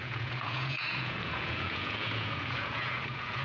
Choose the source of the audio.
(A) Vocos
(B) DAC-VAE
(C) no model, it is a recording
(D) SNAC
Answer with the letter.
A